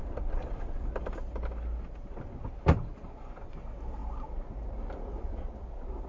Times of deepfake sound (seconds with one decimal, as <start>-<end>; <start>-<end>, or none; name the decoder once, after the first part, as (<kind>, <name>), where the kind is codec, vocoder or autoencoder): 3.0-3.6 (vocoder, Vocos)